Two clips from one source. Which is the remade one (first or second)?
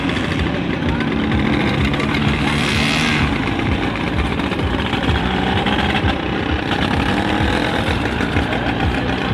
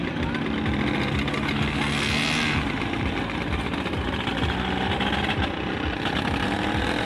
first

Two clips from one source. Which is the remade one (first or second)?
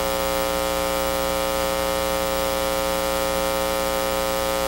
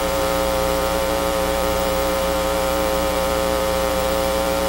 second